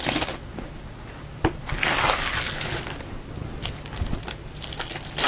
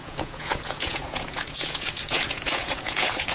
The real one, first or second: first